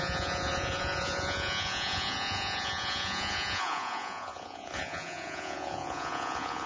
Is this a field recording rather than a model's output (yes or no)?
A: no